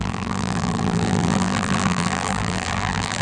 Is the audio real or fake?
fake